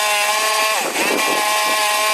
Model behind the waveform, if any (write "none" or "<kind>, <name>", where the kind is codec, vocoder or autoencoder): none